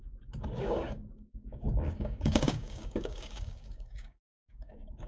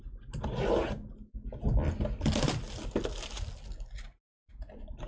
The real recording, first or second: second